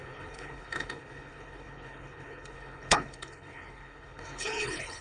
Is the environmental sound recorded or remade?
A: remade